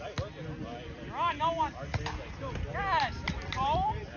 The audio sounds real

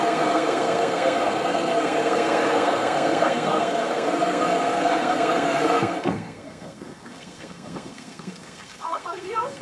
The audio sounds fake